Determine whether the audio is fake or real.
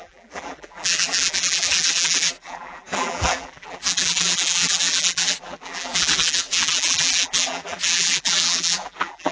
fake